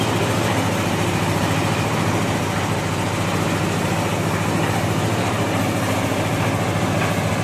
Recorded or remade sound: recorded